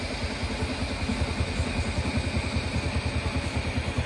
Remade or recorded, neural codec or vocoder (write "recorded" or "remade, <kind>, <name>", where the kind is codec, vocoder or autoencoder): recorded